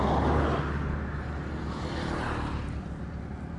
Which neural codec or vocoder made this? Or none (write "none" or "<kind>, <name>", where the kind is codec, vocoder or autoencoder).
none